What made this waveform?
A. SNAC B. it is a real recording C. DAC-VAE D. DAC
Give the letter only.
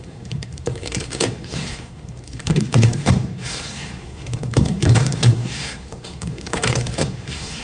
A